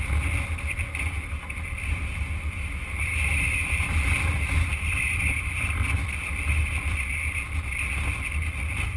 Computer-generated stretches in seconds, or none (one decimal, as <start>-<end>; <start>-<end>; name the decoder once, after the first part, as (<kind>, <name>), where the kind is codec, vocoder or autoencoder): none